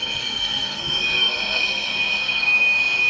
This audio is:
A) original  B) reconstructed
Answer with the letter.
B